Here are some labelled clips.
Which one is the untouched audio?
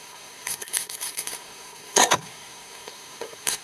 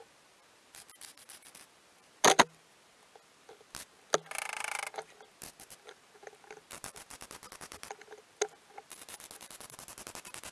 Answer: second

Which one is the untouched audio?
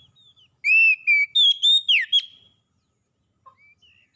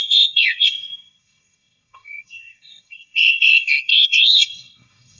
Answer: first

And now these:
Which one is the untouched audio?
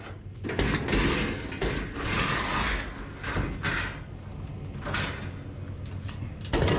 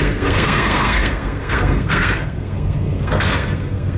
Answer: first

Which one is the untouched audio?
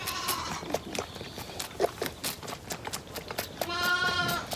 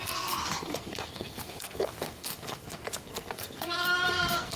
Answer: first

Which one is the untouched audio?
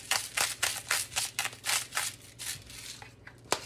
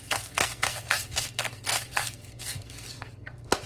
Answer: first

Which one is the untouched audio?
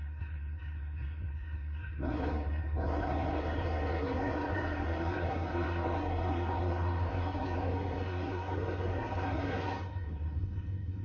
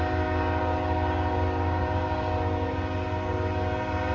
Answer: second